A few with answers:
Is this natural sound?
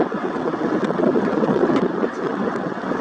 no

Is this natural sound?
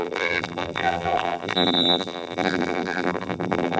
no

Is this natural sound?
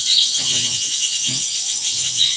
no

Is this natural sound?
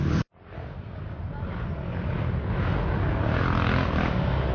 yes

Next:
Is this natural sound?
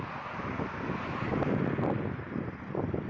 yes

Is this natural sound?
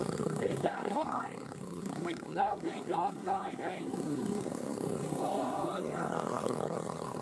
no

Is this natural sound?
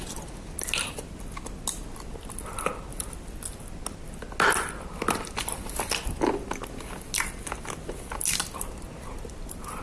yes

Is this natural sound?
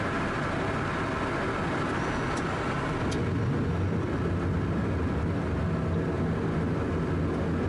yes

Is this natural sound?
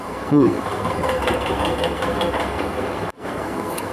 no